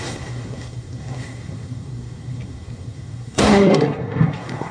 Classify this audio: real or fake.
fake